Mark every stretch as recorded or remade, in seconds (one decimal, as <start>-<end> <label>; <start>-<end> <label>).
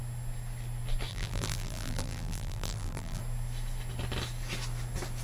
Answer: 0.0-1.1 recorded; 1.1-3.2 remade; 3.2-5.2 recorded